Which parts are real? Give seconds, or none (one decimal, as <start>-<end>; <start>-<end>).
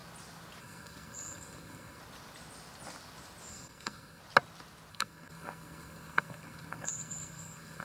0.0-0.6; 2.0-3.5; 4.2-4.9